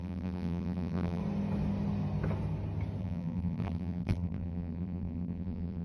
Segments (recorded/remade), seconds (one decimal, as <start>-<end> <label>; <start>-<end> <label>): 0.0-1.2 remade; 1.2-3.0 recorded; 3.0-5.8 remade